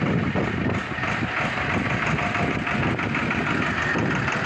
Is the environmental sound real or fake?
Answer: fake